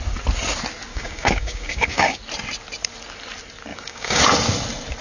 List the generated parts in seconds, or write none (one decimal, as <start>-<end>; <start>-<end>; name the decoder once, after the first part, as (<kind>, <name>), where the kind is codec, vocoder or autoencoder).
0.9-2.2 (codec, DAC); 3.7-4.2